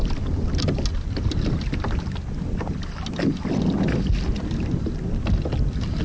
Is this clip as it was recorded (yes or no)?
yes